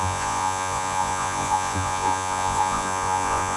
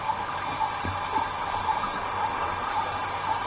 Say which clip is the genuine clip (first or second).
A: second